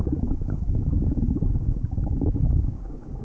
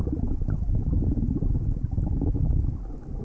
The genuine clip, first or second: second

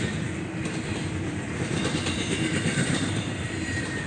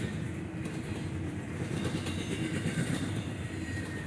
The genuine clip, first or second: second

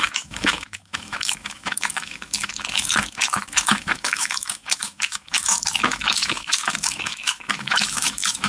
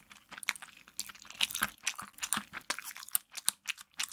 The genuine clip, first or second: second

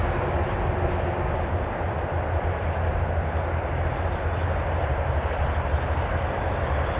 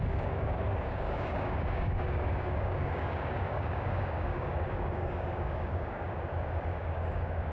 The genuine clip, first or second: first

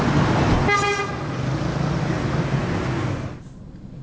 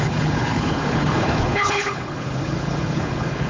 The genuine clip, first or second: first